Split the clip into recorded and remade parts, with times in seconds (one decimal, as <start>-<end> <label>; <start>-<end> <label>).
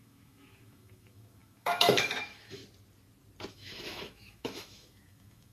0.0-2.6 remade; 2.6-3.5 recorded; 3.5-5.5 remade